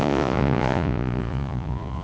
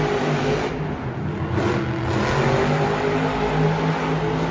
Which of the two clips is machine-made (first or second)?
first